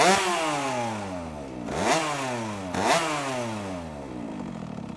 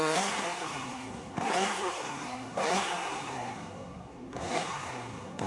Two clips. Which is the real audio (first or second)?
first